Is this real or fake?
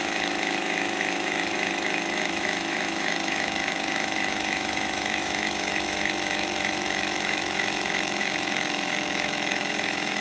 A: fake